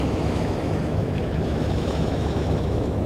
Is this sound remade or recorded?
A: remade